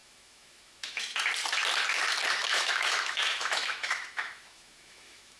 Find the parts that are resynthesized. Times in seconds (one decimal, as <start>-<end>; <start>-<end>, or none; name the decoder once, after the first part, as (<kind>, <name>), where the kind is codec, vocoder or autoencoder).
0.0-1.0 (autoencoder, DAC-VAE); 2.4-5.4